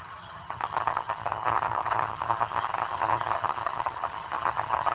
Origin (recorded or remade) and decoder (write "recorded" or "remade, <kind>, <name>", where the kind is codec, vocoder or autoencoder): remade, vocoder, HiFi-GAN